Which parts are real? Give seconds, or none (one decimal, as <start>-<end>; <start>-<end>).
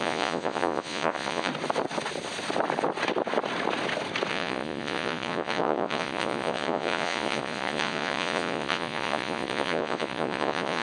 1.5-4.3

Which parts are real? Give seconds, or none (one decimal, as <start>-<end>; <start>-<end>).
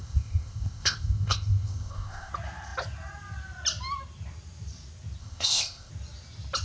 2.3-5.2; 5.9-6.6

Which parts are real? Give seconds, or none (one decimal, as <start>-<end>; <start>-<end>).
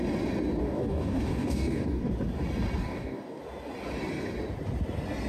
0.0-0.6; 2.1-2.8; 3.4-5.3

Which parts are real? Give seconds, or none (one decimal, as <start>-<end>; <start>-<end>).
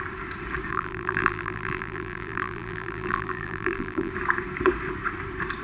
0.0-0.7; 4.1-5.6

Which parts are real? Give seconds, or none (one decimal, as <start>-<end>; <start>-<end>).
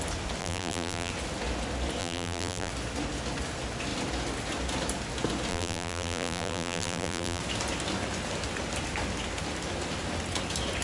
0.0-0.4; 1.1-2.0; 2.7-5.5; 7.4-10.8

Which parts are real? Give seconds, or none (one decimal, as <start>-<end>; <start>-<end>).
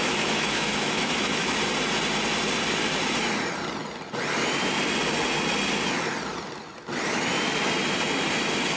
1.6-8.8